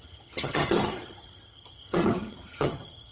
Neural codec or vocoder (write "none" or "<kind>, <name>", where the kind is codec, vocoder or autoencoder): vocoder, HiFi-GAN